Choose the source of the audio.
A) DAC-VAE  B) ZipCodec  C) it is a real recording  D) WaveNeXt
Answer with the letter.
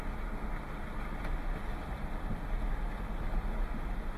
C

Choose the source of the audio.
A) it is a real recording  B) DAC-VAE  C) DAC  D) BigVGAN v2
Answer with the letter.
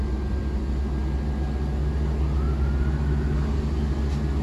A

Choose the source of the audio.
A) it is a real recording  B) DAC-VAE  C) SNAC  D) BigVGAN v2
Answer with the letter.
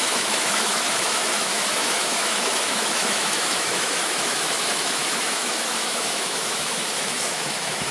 B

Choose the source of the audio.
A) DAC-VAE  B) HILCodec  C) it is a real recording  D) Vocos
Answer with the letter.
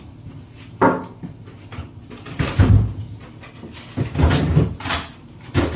C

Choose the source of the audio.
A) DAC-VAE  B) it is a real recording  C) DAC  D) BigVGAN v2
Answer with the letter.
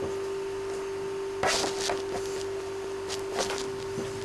B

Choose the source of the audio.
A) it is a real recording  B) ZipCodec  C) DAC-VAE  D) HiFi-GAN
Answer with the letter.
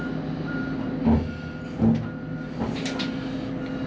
A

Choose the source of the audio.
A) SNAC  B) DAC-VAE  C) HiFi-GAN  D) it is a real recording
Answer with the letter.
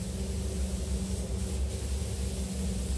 D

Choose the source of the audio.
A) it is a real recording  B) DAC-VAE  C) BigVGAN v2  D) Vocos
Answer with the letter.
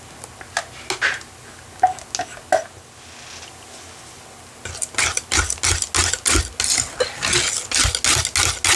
A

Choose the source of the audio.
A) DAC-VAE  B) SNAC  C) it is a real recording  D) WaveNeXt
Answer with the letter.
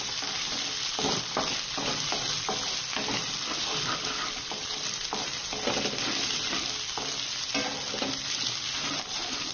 C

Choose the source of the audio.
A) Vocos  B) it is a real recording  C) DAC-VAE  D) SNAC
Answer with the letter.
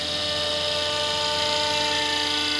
B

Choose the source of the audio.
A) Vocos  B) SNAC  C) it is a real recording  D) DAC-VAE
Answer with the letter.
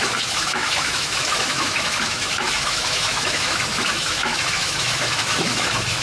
D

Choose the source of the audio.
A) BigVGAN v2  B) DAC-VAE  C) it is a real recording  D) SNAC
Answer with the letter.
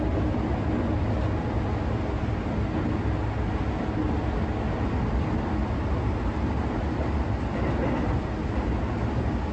C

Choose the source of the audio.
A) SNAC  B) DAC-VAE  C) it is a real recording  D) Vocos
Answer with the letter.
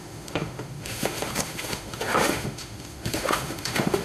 B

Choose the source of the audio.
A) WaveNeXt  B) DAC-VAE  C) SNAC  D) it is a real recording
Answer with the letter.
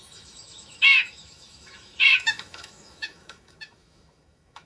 B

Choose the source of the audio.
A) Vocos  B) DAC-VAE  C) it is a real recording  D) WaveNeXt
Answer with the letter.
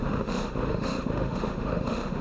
B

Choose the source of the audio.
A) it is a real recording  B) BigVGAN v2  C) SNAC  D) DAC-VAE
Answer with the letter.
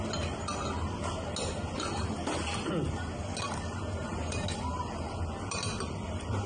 A